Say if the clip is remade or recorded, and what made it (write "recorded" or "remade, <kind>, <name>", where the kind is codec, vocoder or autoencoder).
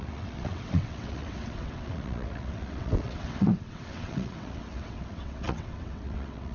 remade, vocoder, WaveNeXt